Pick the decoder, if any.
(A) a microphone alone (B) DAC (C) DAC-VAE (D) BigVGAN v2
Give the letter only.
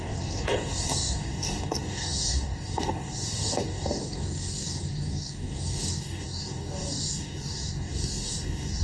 B